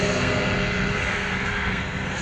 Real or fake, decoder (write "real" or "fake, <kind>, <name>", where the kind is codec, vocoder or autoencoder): fake, codec, SNAC